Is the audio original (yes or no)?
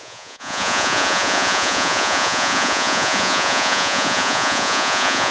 no